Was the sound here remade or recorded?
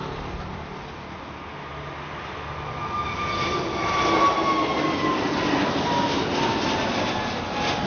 recorded